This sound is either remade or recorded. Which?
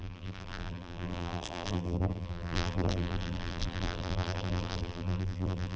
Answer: remade